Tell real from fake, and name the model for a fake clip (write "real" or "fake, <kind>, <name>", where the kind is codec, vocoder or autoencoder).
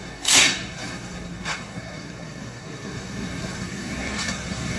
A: fake, codec, SNAC